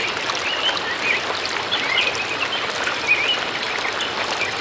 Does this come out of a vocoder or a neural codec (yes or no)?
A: no